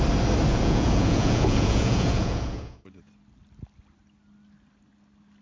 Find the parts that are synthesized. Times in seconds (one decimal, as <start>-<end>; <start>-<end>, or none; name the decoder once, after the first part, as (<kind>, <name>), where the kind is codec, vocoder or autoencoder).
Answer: 0.5-3.1 (vocoder, Vocos)